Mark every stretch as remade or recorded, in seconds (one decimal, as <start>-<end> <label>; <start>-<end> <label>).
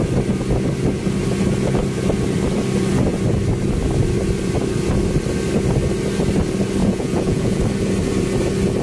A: 0.0-6.8 recorded; 6.8-7.6 remade; 7.6-8.8 recorded